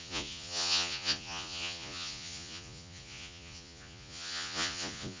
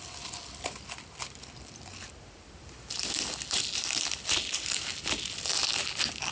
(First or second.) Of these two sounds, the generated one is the first